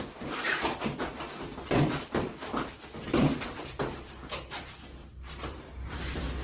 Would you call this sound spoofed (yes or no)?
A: yes